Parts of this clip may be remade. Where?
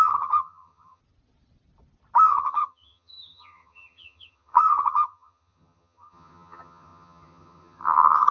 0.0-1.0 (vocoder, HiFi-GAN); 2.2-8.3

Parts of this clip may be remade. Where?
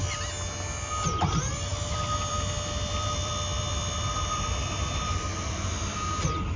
1.7-5.7 (vocoder, BigVGAN v2)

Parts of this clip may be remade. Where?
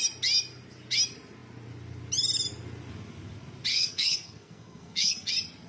3.7-5.3 (codec, SNAC)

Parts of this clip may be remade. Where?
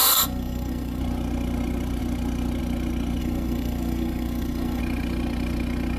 0.0-1.0 (codec, SNAC); 3.2-4.8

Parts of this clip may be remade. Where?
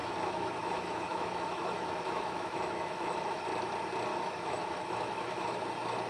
0.0-3.4 (autoencoder, DAC-VAE); 4.1-5.6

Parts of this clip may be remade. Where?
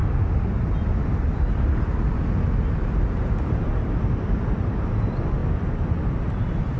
none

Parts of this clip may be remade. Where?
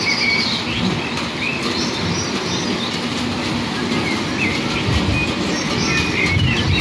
none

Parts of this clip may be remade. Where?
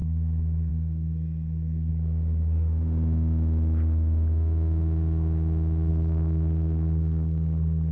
0.0-1.9 (codec, SNAC); 5.9-7.9